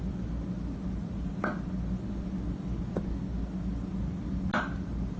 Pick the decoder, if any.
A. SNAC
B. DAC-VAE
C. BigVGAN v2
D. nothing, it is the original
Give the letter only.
D